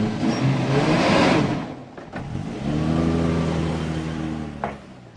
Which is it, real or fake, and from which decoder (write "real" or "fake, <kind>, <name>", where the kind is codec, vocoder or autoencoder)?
real